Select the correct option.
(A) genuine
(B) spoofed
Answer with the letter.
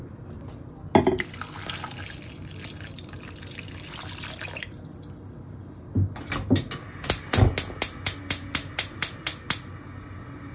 A